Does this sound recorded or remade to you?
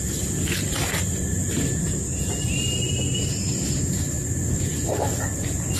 remade